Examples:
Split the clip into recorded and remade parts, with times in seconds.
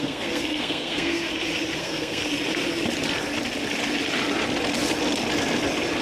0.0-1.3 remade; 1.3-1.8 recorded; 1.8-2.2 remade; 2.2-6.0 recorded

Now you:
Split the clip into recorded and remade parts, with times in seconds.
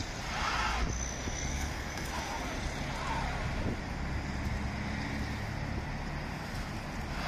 0.0-1.5 recorded; 1.5-2.1 remade; 2.1-7.3 recorded